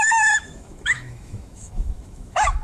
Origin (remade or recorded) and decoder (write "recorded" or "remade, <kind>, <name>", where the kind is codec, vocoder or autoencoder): remade, autoencoder, DAC-VAE